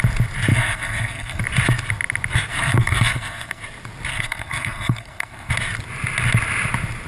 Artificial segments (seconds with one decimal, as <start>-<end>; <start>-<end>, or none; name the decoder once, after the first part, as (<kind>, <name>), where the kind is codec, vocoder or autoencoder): 0.5-1.4 (codec, SNAC); 2.5-3.6; 4.1-5.5